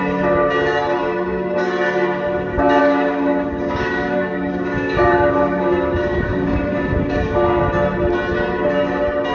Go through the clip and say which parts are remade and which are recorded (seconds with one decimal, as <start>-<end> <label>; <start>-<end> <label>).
0.0-1.0 recorded; 1.0-1.6 remade; 1.6-2.8 recorded; 2.8-7.6 remade; 7.6-9.3 recorded